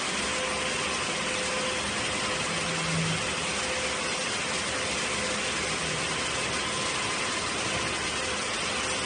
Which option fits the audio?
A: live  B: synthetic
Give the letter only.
A